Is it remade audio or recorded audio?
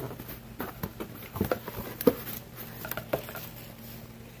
recorded